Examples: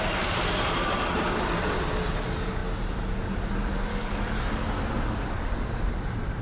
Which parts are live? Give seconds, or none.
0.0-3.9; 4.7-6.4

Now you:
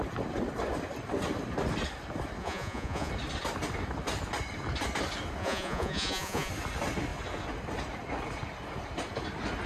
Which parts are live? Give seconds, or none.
0.0-2.4; 3.1-5.4; 6.5-9.7

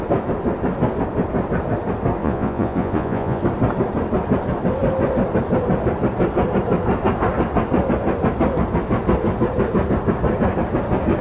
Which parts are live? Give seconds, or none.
0.0-2.2; 3.4-11.2

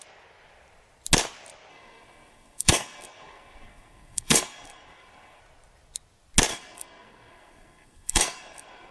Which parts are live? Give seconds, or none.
0.0-1.7; 5.4-6.5

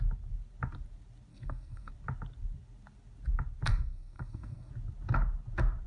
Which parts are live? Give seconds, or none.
0.0-1.3; 1.9-3.7; 4.7-5.9

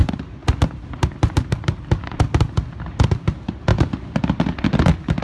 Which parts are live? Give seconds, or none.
2.7-3.7; 4.6-5.2

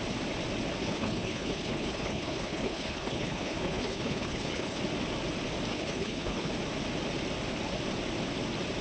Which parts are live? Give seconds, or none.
0.0-0.8; 4.8-5.7; 6.5-8.8